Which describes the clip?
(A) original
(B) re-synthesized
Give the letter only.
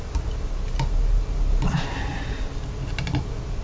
A